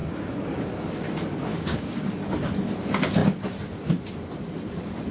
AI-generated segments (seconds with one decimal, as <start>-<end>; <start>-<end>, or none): 0.0-0.7; 1.5-2.0